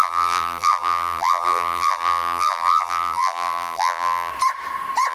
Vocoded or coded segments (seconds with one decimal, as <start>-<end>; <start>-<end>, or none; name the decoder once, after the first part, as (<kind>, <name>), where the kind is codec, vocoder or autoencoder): 0.0-4.3 (vocoder, BigVGAN v2)